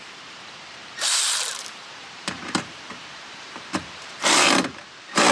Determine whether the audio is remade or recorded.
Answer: remade